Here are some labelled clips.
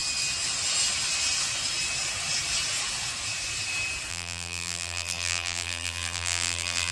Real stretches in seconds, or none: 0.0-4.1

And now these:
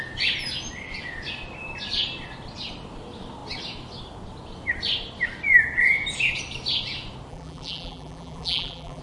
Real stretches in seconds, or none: 0.0-7.3